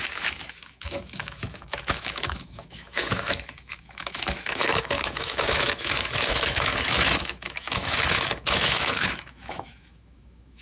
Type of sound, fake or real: fake